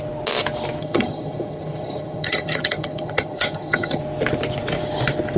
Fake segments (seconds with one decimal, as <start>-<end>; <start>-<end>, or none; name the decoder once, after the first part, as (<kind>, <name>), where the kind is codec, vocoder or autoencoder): 0.8-4.0 (vocoder, HiFi-GAN)